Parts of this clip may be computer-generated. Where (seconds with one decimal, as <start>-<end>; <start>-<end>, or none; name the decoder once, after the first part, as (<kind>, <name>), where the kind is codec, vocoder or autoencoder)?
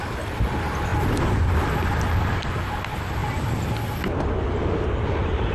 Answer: none